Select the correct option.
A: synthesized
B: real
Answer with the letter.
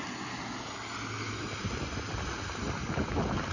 B